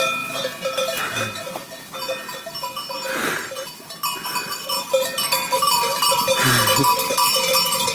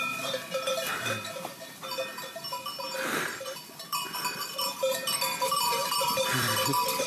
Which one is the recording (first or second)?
first